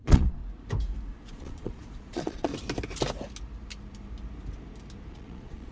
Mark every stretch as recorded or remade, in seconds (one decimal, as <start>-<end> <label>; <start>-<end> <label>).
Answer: 0.0-0.4 remade; 0.4-1.3 recorded; 1.3-2.5 remade; 2.5-5.1 recorded; 5.1-5.7 remade